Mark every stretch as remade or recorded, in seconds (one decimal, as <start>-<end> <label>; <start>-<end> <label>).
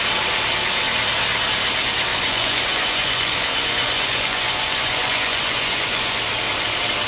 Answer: 0.0-2.1 recorded; 2.1-6.2 remade; 6.2-7.1 recorded